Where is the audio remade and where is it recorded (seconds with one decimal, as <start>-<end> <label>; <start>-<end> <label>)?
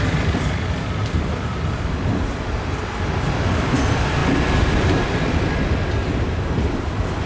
0.0-7.3 recorded